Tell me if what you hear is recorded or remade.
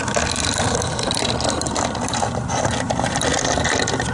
recorded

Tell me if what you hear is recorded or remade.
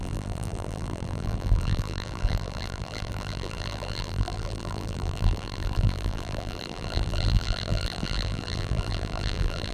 remade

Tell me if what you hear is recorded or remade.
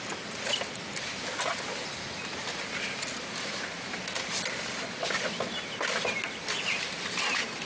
recorded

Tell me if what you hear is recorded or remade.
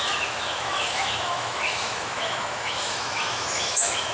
remade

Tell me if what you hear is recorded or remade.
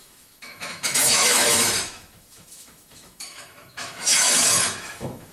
remade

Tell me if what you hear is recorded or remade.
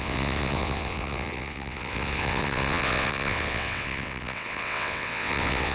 remade